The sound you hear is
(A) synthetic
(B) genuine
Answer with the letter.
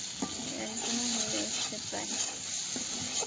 B